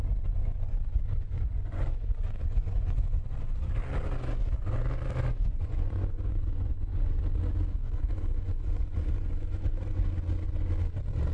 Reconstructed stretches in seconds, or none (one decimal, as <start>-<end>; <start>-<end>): 0.4-3.7; 5.5-7.2; 7.8-10.0